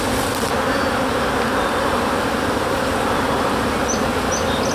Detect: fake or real real